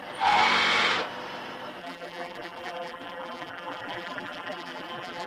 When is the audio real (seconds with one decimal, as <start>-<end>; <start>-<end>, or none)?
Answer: 0.0-1.8